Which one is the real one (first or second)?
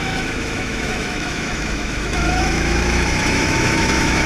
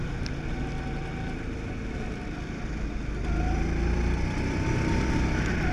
second